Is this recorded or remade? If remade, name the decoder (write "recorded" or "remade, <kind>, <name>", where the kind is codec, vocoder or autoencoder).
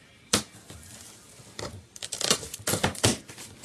remade, vocoder, BigVGAN v2